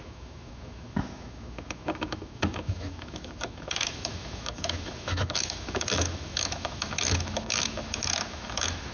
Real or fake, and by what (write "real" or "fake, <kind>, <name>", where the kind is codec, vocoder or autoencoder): fake, autoencoder, DAC-VAE